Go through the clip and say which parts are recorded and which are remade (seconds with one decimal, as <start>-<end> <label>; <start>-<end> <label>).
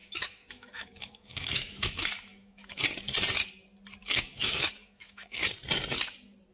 0.0-2.8 remade; 2.8-4.0 recorded; 4.0-5.4 remade; 5.4-6.5 recorded